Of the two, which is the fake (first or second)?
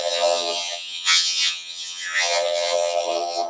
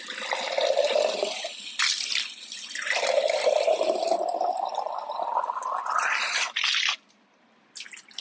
first